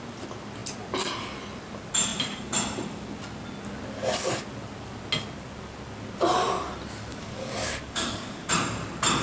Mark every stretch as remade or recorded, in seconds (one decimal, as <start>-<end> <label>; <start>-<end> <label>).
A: 0.0-7.1 recorded; 7.1-8.5 remade; 8.5-9.2 recorded